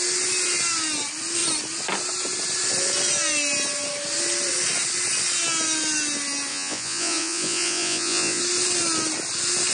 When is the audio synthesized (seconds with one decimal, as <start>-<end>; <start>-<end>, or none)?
6.5-8.4